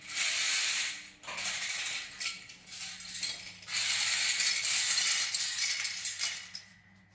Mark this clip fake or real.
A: real